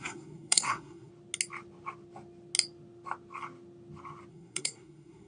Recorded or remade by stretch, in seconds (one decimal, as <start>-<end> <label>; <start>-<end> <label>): 0.0-1.1 remade; 1.1-4.3 recorded; 4.3-5.3 remade